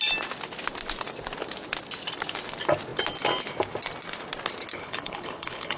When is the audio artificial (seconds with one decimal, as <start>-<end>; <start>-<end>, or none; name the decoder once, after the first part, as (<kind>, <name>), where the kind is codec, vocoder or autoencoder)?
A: 4.7-5.8 (codec, HILCodec)